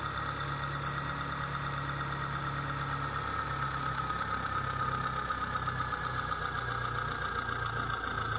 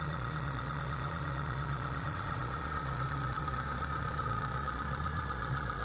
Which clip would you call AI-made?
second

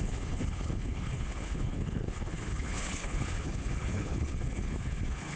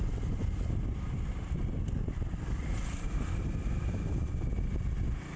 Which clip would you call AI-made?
first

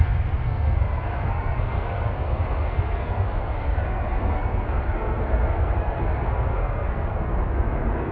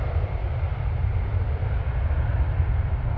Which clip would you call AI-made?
first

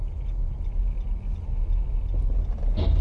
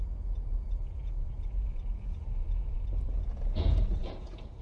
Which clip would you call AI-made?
second